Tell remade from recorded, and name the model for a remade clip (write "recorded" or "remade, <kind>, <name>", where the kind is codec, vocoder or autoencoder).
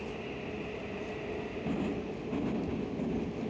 recorded